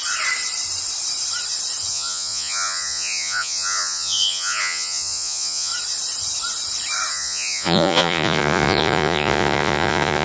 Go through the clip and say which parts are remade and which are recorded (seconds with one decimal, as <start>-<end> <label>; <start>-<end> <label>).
0.0-1.9 recorded; 1.9-5.7 remade; 5.7-7.1 recorded; 7.1-10.2 remade